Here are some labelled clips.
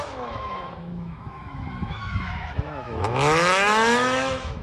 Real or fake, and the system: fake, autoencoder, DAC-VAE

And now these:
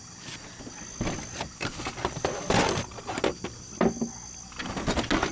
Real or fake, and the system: real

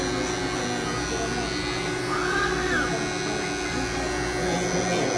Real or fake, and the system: real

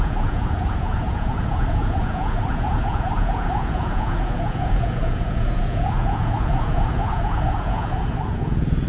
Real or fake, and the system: fake, vocoder, Vocos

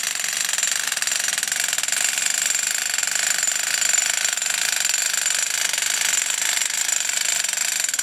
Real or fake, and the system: real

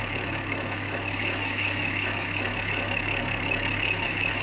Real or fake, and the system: fake, autoencoder, DAC-VAE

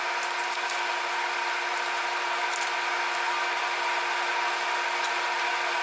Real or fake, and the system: real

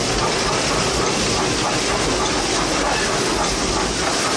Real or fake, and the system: real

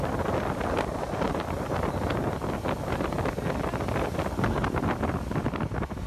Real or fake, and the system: real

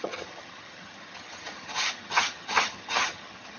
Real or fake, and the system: fake, vocoder, HiFi-GAN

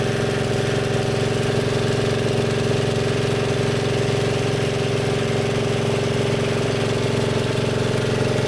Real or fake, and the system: real